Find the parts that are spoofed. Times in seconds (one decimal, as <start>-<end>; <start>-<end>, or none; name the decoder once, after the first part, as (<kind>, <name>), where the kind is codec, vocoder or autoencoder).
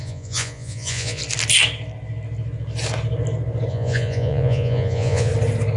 0.0-1.2 (vocoder, Vocos); 3.7-5.3